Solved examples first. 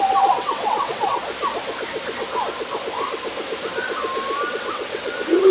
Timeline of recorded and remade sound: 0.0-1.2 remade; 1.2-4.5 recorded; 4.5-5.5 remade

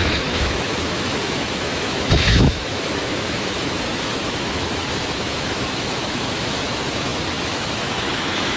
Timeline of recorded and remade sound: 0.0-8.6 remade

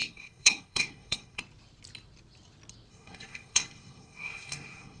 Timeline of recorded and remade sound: 0.0-1.4 remade; 1.4-2.9 recorded; 2.9-5.0 remade

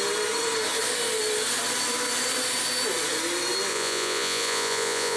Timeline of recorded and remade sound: 0.0-3.7 recorded; 3.7-5.2 remade

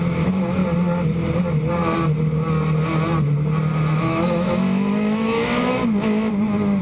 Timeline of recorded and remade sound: 0.0-0.6 remade; 0.6-4.0 recorded; 4.0-5.8 remade; 5.8-6.8 recorded

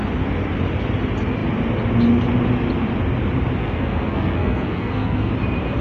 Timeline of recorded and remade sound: 0.0-3.6 recorded; 3.6-5.3 remade; 5.3-5.8 recorded

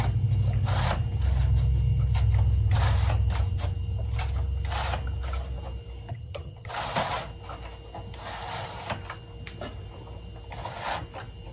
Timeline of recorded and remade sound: 0.0-6.1 recorded; 6.1-6.7 remade; 6.7-11.5 recorded

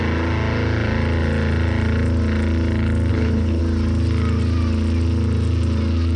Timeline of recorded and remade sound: 0.0-3.1 recorded; 3.1-3.6 remade; 3.6-6.2 recorded